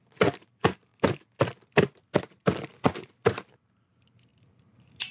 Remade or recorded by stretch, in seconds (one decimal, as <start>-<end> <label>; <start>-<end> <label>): 0.0-0.9 remade; 0.9-2.2 recorded; 2.2-5.1 remade